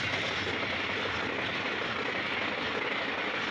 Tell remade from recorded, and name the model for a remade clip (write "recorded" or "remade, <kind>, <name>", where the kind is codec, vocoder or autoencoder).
recorded